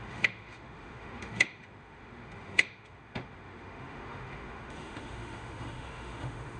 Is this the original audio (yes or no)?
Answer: no